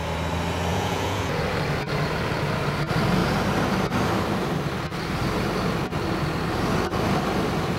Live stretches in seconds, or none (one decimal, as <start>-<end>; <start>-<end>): 0.0-0.7; 1.4-7.8